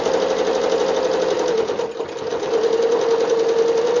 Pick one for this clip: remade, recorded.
recorded